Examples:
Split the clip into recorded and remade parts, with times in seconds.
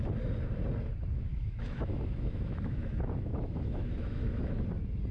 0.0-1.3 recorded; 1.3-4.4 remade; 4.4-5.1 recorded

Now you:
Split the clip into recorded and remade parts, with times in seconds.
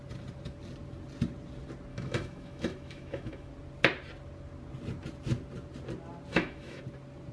0.0-1.9 recorded; 1.9-3.5 remade; 3.5-6.3 recorded; 6.3-6.8 remade; 6.8-7.3 recorded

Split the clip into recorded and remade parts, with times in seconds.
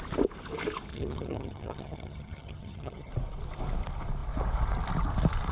0.0-0.9 recorded; 0.9-3.1 remade; 3.1-5.5 recorded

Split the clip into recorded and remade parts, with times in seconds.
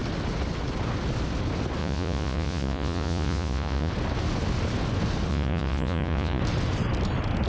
0.0-1.8 recorded; 1.8-3.9 remade; 3.9-5.3 recorded; 5.3-6.4 remade; 6.4-7.5 recorded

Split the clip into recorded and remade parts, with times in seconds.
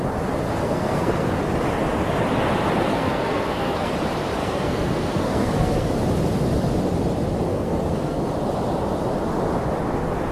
0.0-0.6 recorded; 0.6-1.3 remade; 1.3-2.9 recorded; 2.9-3.9 remade; 3.9-4.4 recorded; 4.4-5.9 remade; 5.9-7.5 recorded; 7.5-8.2 remade; 8.2-10.3 recorded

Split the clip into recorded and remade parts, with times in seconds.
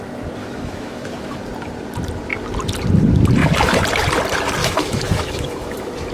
0.0-0.4 recorded; 0.4-1.4 remade; 1.4-4.6 recorded; 4.6-6.1 remade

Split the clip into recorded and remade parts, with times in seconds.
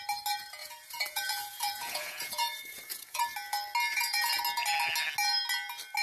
0.0-0.6 recorded; 0.6-3.2 remade; 3.2-3.9 recorded; 3.9-4.4 remade; 4.4-6.0 recorded